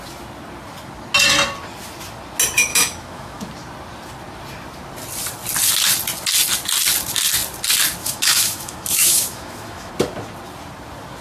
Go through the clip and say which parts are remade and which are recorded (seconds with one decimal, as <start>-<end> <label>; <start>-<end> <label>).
0.0-2.7 recorded; 2.7-3.5 remade; 3.5-8.0 recorded; 8.0-9.9 remade; 9.9-11.2 recorded